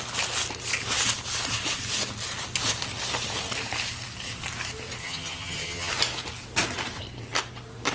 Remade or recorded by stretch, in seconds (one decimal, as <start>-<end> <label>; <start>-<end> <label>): 0.0-5.0 recorded; 5.0-5.9 remade; 5.9-7.9 recorded